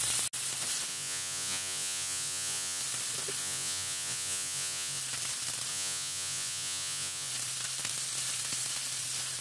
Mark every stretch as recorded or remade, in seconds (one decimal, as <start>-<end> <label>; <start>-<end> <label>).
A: 0.0-0.9 recorded; 0.9-2.8 remade; 2.8-3.4 recorded; 3.4-5.0 remade; 5.0-5.7 recorded; 5.7-7.3 remade; 7.3-9.4 recorded